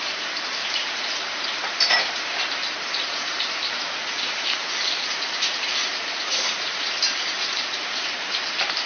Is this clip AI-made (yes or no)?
yes